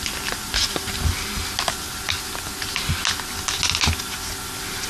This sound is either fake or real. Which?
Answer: real